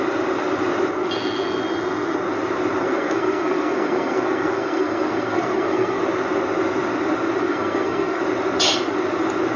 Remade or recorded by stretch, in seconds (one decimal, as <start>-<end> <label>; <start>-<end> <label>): 0.0-2.8 recorded; 2.8-6.0 remade; 6.0-7.4 recorded; 7.4-8.2 remade; 8.2-9.6 recorded